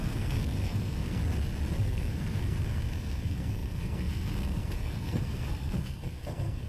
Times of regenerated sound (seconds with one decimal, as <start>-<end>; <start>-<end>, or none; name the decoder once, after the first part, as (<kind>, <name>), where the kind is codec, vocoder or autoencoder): 0.0-1.2 (codec, SNAC); 1.8-6.7